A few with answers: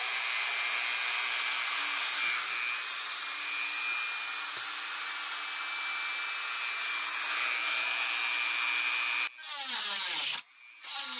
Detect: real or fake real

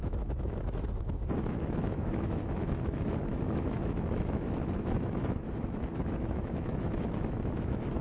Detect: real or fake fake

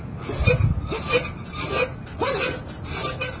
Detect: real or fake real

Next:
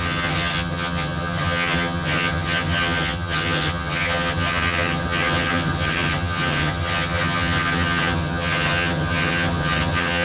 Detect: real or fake fake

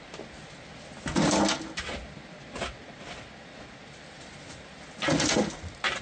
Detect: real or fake real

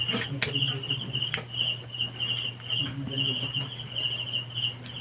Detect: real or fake real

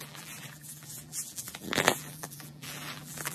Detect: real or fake fake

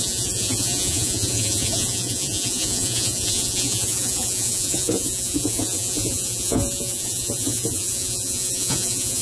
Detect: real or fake fake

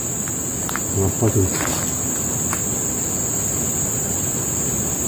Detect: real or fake real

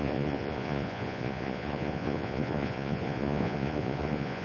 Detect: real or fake fake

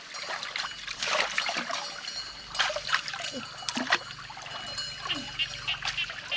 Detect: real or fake real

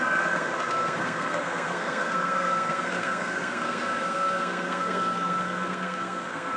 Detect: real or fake fake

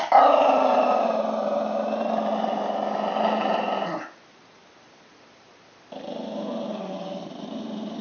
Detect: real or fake fake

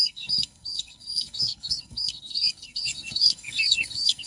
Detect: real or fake fake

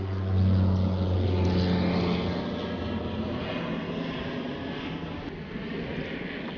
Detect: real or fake real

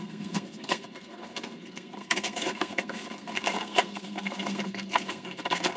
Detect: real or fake fake